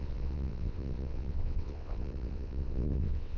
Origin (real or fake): fake